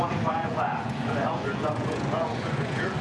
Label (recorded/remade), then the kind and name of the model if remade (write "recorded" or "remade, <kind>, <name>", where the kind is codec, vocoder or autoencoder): remade, vocoder, Vocos